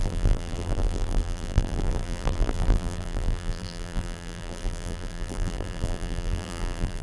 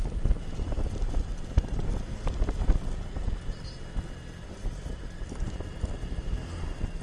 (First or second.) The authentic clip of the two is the second